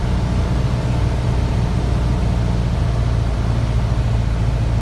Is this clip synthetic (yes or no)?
no